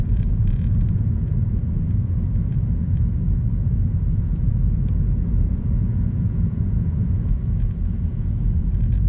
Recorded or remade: remade